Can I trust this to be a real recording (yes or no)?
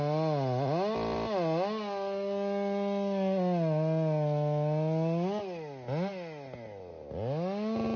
yes